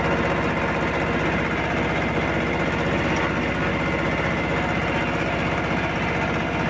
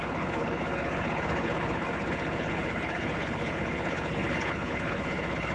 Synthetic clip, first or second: second